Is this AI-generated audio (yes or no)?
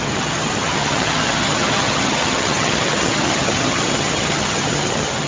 yes